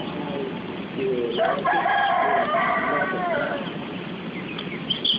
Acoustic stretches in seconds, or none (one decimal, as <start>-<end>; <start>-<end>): 0.0-1.3; 4.4-5.2

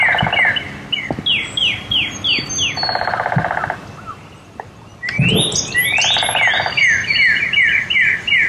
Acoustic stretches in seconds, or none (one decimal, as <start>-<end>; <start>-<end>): 0.0-1.6; 2.4-8.5